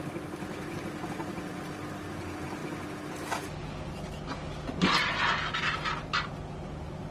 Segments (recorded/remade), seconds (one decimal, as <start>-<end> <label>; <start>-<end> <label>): 0.0-7.1 recorded